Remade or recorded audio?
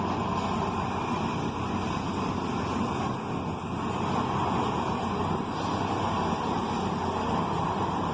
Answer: recorded